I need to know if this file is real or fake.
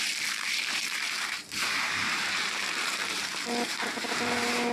fake